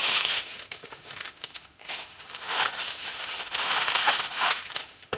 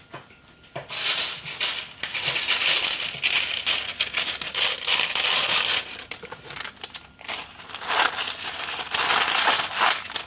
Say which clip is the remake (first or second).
first